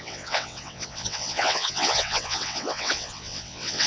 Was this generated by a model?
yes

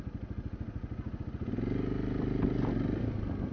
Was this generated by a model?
no